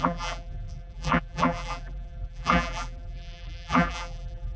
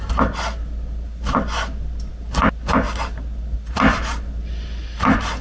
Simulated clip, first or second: first